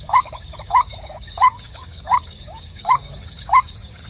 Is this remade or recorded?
remade